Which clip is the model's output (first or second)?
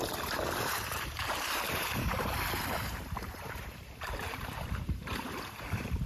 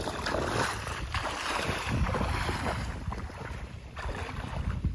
first